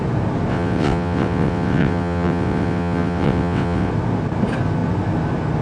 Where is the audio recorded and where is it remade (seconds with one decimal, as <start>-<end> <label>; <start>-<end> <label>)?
0.0-0.5 recorded; 0.5-3.9 remade; 3.9-5.6 recorded